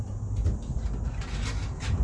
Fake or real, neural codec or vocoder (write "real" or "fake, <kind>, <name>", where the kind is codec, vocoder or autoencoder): real